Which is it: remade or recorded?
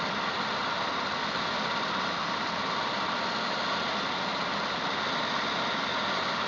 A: recorded